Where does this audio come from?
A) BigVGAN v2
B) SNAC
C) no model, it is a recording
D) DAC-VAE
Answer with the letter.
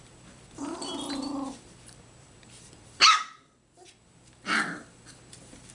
A